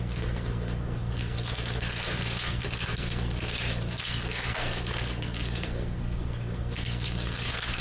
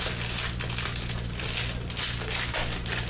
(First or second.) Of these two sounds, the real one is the second